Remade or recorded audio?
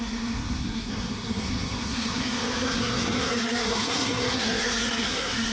remade